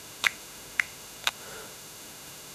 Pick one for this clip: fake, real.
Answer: fake